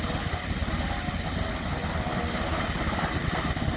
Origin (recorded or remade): recorded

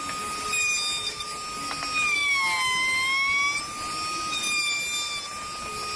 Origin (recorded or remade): recorded